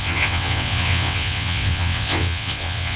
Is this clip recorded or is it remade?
remade